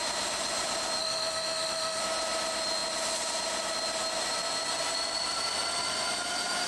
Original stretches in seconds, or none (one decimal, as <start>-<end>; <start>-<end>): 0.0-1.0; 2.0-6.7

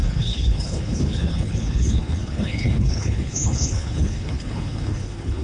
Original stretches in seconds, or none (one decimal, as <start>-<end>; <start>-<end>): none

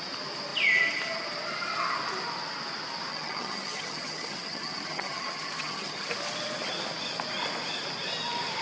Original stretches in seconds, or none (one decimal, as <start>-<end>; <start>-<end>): 0.0-3.1; 6.1-8.6

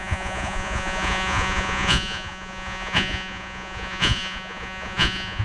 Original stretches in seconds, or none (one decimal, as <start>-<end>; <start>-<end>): none